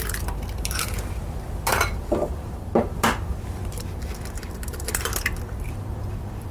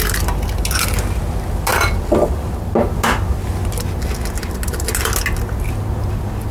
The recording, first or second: second